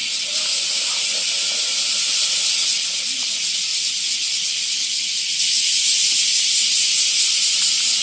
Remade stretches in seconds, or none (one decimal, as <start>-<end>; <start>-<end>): none

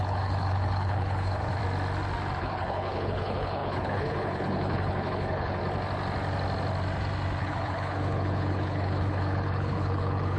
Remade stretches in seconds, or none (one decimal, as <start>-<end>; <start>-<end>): 0.0-1.6; 2.4-5.6; 7.4-10.4

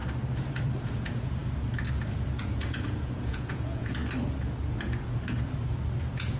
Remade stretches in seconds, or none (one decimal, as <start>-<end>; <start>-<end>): 0.8-1.4; 2.4-4.0; 6.0-6.4